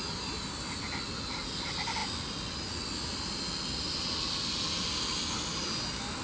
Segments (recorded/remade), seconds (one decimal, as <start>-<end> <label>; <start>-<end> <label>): 0.0-6.2 recorded